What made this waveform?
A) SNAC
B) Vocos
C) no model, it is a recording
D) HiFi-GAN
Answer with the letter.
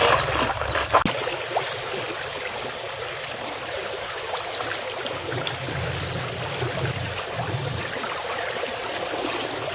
C